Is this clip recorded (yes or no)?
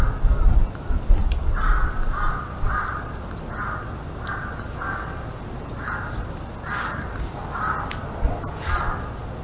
yes